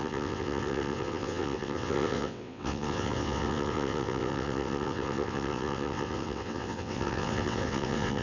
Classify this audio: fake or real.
fake